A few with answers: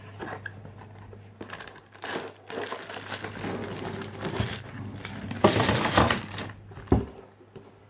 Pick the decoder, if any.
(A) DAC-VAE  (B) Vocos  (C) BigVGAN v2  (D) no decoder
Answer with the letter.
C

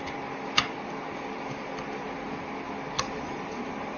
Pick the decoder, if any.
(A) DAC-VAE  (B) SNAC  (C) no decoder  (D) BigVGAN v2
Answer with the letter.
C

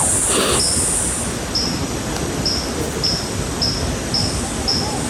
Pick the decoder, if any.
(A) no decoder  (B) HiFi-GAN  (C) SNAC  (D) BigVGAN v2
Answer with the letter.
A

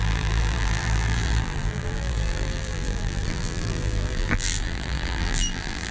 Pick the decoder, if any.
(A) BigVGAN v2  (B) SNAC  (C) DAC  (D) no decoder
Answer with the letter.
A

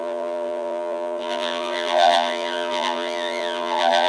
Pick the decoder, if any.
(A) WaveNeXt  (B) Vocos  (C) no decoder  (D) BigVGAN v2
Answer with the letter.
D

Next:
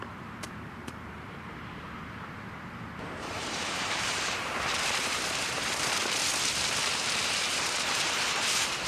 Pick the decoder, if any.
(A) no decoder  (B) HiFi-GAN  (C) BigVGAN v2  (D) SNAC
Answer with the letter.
C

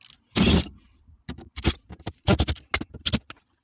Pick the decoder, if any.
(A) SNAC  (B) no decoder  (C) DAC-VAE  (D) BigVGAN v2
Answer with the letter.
B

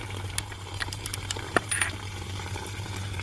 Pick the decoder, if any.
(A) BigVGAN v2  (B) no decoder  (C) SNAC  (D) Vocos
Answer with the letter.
A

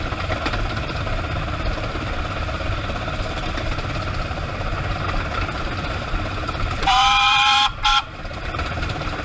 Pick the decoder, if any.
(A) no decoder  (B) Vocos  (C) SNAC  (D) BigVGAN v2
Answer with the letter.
D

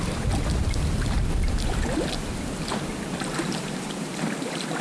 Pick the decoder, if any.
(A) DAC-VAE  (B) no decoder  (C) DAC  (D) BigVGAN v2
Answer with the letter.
D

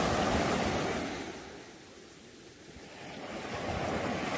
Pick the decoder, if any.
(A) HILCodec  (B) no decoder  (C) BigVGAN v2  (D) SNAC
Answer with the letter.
B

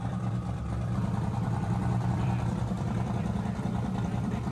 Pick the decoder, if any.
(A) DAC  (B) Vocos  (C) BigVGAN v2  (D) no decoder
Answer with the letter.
C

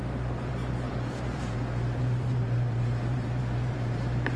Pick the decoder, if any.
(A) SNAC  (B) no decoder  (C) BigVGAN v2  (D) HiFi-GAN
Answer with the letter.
C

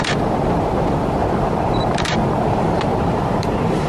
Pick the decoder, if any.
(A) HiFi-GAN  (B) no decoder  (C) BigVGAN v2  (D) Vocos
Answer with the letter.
C